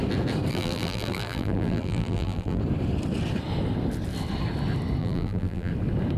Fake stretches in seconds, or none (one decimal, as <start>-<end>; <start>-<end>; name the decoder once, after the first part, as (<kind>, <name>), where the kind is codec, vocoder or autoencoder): 0.5-2.6 (vocoder, BigVGAN v2); 5.0-5.7